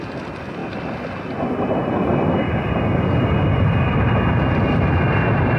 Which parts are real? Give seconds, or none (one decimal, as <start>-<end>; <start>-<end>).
0.0-5.6